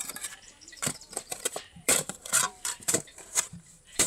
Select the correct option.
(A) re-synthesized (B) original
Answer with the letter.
A